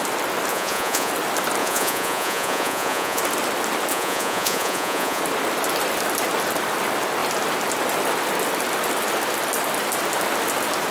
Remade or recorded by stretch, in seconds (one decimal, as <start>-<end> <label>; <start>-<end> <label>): 0.0-0.5 recorded; 0.5-1.1 remade; 1.1-1.6 recorded; 1.6-3.2 remade; 3.2-3.9 recorded; 3.9-5.2 remade; 5.2-10.9 recorded